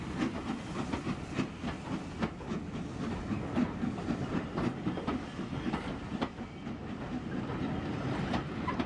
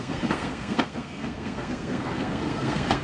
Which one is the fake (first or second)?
second